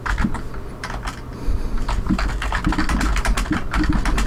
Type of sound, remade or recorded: recorded